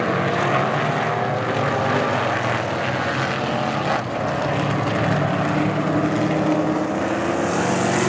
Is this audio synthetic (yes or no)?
no